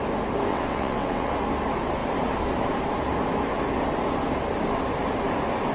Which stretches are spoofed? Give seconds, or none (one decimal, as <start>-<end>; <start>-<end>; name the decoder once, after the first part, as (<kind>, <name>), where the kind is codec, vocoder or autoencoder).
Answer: 0.5-1.3 (vocoder, WaveNeXt)